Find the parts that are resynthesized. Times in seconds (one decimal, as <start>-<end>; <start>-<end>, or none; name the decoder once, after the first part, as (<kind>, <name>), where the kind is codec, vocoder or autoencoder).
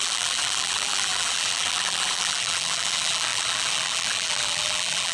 0.0-5.1 (vocoder, BigVGAN v2)